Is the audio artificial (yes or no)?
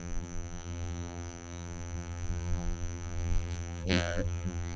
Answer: yes